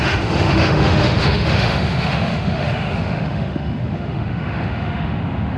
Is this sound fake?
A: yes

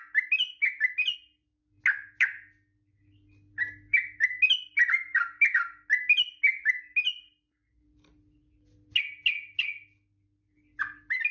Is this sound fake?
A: no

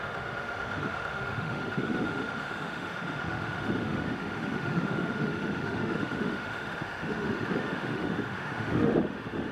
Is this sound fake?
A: yes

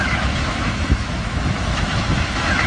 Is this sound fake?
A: yes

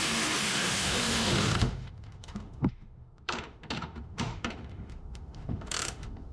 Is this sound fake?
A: yes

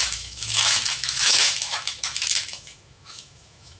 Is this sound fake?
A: yes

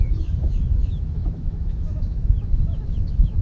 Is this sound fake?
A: yes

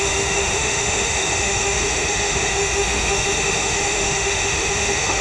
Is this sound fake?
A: yes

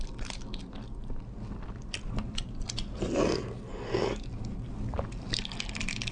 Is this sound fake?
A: no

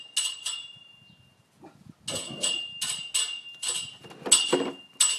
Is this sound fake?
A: no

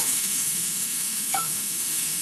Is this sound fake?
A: yes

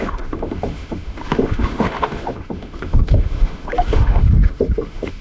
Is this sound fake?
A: yes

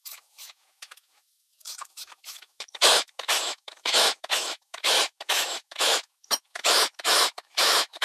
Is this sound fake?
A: yes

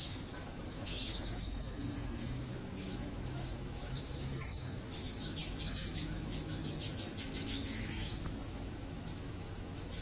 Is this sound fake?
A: yes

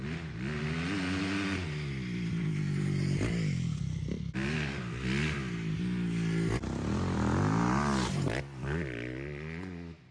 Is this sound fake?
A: no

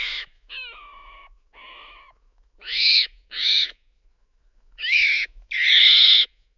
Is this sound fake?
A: yes